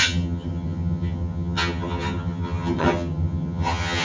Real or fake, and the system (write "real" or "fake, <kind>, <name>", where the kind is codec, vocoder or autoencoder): fake, vocoder, HiFi-GAN